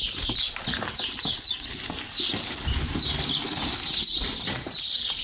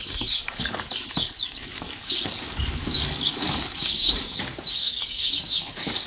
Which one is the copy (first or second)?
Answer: second